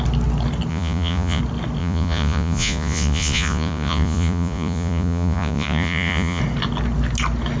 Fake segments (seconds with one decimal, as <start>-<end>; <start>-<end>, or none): 0.7-1.4; 1.8-6.4